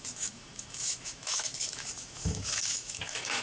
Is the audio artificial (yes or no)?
yes